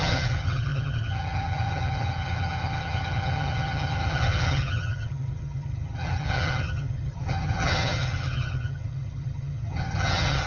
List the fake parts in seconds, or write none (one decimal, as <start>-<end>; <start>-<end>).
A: 0.0-10.5

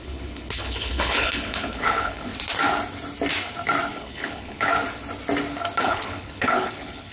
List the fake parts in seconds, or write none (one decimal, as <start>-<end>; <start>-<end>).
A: 0.0-2.3; 3.9-4.7; 5.8-7.1

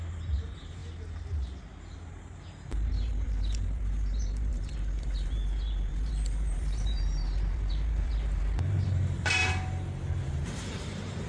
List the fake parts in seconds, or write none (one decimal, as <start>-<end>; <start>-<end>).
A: 0.0-0.8; 2.2-9.4; 10.2-11.3

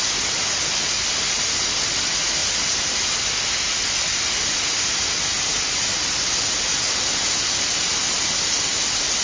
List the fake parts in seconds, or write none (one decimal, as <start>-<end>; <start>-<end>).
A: none

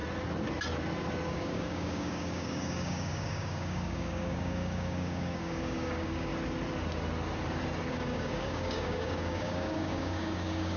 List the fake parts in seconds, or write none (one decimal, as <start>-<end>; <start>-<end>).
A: 1.3-6.3; 7.9-10.8

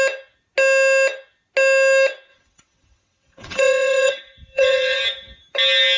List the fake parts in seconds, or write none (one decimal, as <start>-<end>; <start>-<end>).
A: 2.3-5.0